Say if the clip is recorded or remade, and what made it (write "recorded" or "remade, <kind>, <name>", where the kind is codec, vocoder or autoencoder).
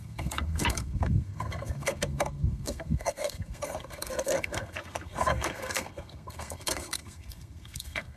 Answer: remade, codec, SNAC